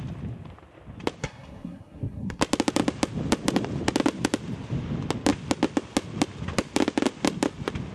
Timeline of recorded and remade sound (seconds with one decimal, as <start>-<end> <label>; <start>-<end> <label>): 0.0-1.2 recorded; 1.2-2.4 remade; 2.4-7.9 recorded